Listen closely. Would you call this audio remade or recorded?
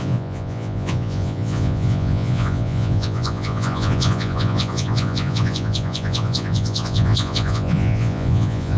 remade